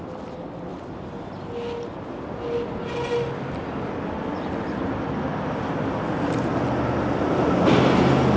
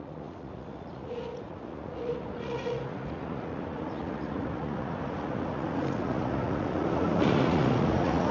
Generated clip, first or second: second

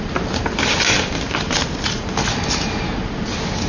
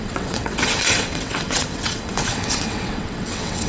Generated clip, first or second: second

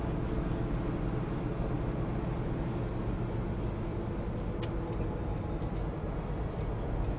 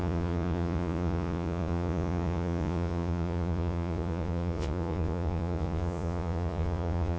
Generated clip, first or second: second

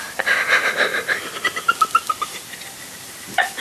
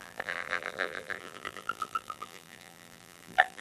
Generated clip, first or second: second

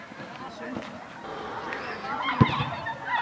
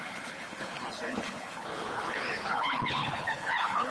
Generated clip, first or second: second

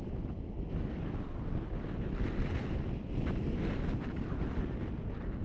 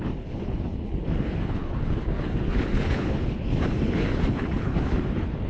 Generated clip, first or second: second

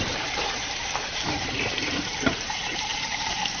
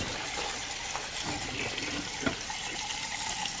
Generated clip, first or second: first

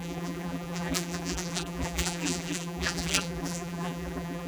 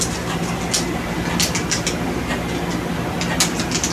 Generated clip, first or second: first